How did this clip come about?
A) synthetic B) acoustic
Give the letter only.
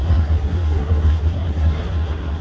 A